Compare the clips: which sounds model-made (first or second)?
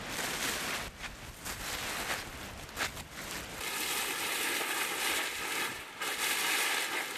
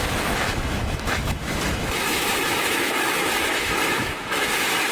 second